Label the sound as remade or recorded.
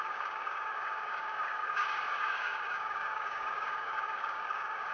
remade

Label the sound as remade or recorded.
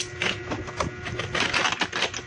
recorded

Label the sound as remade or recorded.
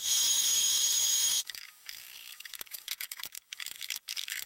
remade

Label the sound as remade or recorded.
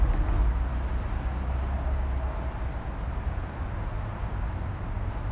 recorded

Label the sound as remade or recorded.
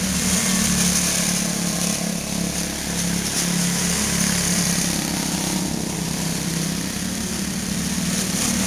recorded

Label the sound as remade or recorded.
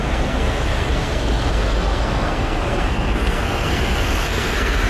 remade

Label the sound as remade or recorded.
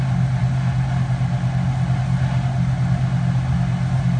recorded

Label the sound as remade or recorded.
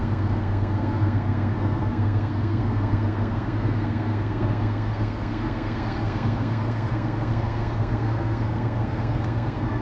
remade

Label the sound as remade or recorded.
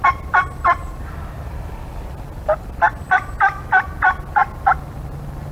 recorded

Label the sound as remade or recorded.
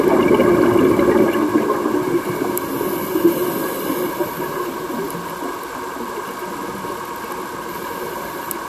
recorded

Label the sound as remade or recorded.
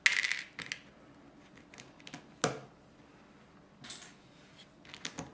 recorded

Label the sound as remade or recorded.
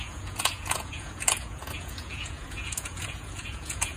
remade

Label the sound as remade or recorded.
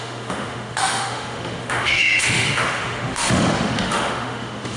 remade